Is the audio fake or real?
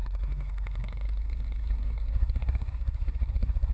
fake